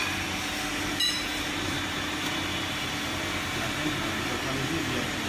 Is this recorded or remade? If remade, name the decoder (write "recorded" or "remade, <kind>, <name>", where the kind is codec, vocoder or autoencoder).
recorded